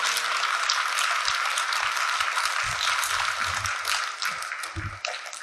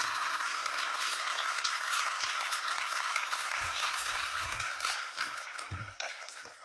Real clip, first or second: first